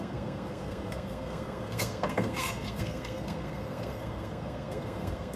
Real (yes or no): no